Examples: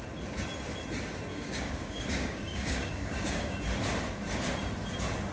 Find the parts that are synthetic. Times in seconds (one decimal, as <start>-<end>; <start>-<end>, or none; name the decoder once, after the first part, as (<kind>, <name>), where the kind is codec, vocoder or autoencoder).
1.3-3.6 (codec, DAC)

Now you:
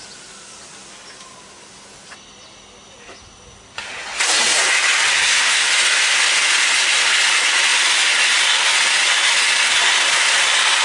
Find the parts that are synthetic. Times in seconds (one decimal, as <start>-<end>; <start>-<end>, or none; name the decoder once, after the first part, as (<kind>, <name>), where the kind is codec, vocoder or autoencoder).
5.1-5.7 (codec, SNAC)

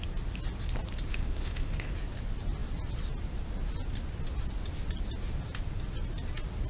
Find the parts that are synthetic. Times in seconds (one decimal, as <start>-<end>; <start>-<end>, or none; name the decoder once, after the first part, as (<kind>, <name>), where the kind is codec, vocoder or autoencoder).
1.1-1.9 (autoencoder, DAC-VAE)